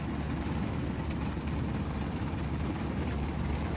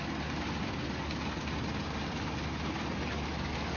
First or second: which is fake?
first